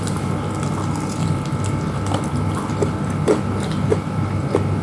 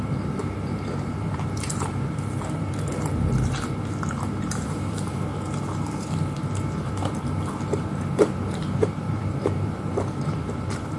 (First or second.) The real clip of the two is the first